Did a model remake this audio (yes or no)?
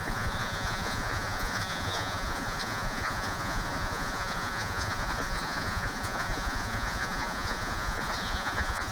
yes